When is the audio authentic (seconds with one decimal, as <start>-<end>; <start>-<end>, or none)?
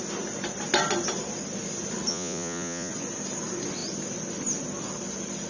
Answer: 0.0-2.1; 2.9-5.5